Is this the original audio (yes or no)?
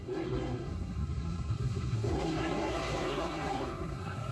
no